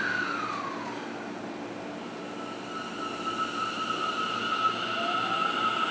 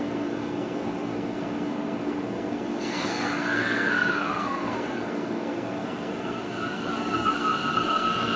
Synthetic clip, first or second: second